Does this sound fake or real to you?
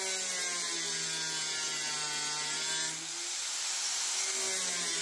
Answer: real